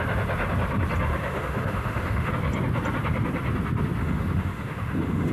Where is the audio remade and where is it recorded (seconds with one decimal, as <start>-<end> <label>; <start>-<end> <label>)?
0.0-1.1 recorded; 1.1-2.3 remade; 2.3-4.0 recorded; 4.0-5.3 remade